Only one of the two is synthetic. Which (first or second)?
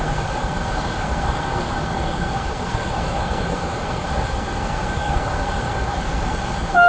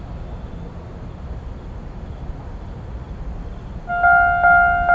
first